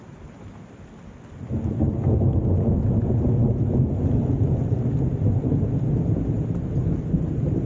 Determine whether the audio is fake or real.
real